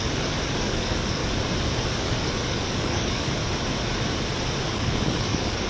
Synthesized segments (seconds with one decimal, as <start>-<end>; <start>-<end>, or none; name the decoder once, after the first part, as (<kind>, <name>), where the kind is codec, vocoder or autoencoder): 0.0-1.2 (codec, DAC); 2.0-3.4; 4.6-5.7